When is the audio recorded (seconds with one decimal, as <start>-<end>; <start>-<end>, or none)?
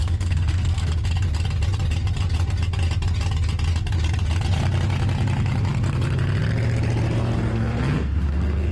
0.9-7.5